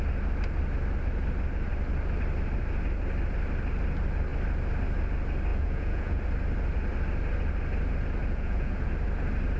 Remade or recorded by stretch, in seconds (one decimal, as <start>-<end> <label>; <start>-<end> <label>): 0.0-5.5 recorded; 5.5-6.2 remade; 6.2-8.2 recorded; 8.2-8.9 remade; 8.9-9.6 recorded